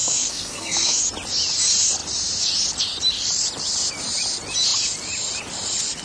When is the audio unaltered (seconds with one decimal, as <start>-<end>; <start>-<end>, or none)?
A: 1.0-6.0